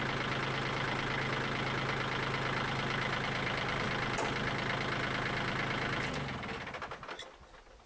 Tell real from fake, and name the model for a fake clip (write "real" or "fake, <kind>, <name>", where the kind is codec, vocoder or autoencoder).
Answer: real